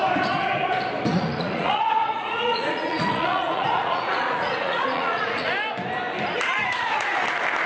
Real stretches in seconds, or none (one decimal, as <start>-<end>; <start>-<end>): 0.0-1.1; 5.5-6.6; 7.2-7.7